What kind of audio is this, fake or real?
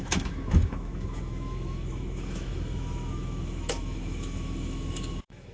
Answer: fake